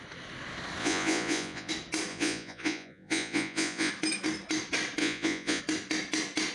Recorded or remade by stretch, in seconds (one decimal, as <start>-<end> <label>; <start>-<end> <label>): 0.0-0.8 recorded; 0.8-1.7 remade; 1.7-2.1 recorded; 2.1-3.9 remade; 3.9-5.0 recorded; 5.0-5.6 remade; 5.6-6.5 recorded

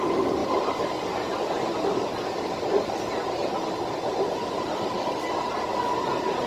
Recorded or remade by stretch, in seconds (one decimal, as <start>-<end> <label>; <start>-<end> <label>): 0.0-6.5 recorded

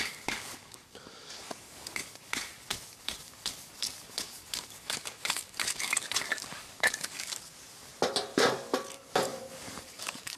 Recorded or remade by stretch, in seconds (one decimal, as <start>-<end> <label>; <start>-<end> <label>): 0.0-7.9 remade; 7.9-8.9 recorded; 8.9-10.4 remade